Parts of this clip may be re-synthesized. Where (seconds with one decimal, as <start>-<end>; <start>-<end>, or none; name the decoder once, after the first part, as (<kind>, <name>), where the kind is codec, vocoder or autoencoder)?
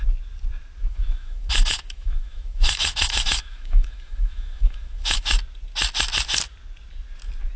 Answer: 0.9-5.3 (autoencoder, DAC-VAE)